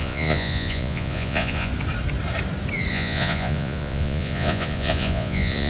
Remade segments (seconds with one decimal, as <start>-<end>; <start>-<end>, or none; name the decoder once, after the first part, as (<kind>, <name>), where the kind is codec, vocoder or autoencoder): 0.0-1.7 (vocoder, Vocos); 2.9-5.7